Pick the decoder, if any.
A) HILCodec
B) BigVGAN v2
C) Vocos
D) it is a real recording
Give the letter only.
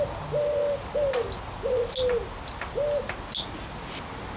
D